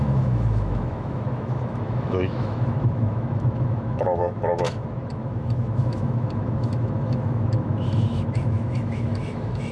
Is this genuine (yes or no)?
no